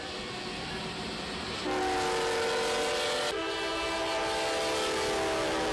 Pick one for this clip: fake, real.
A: real